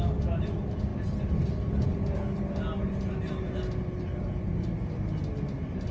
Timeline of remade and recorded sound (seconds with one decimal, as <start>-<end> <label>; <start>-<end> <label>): 0.0-5.9 recorded